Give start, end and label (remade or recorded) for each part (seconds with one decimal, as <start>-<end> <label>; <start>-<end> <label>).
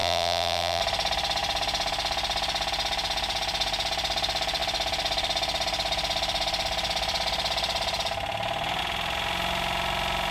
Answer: 0.0-0.8 remade; 0.8-10.3 recorded